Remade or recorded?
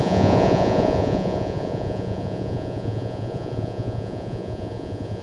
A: remade